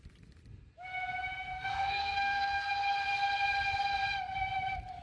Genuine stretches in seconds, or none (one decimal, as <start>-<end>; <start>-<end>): 0.0-1.5; 2.7-5.0